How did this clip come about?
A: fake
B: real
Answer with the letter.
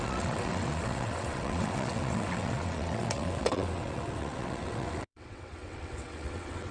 A